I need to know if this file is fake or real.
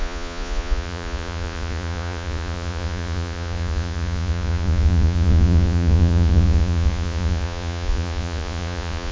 fake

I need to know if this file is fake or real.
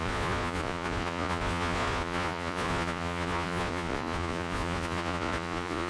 fake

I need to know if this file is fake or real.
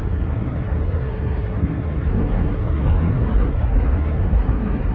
fake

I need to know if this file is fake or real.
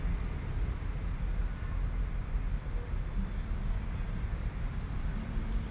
real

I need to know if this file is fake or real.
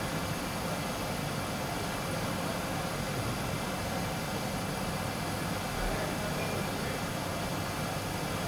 real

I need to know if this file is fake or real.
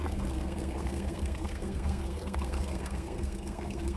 fake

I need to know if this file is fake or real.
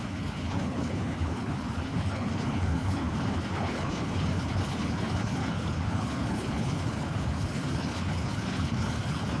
fake